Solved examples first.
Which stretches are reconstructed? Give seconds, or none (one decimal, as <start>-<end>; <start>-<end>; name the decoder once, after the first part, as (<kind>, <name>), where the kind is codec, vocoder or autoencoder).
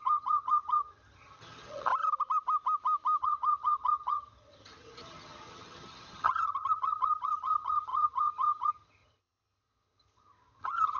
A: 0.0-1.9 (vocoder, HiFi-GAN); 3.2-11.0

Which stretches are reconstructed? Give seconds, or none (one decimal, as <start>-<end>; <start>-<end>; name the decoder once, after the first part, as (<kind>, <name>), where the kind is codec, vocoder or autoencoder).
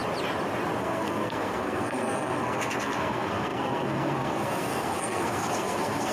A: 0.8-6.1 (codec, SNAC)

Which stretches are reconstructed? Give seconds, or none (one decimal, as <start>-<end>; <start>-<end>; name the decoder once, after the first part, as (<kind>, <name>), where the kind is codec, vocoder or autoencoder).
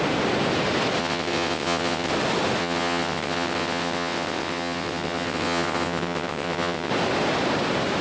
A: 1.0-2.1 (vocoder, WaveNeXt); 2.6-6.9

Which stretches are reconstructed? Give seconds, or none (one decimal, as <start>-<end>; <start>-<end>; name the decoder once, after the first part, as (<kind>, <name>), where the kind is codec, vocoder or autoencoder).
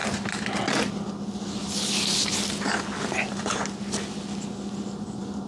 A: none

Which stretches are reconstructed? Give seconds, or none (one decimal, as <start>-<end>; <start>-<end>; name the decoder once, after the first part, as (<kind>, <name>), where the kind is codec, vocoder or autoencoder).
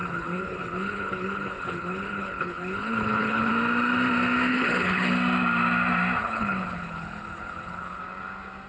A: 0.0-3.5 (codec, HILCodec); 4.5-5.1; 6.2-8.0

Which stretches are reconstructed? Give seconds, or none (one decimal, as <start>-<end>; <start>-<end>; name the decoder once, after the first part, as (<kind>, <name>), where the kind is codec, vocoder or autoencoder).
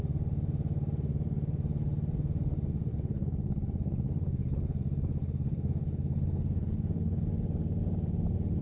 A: 2.9-4.8 (codec, HILCodec); 5.2-7.2